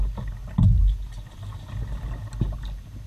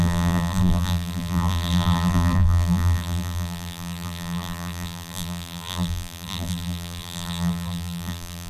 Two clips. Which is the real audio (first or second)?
first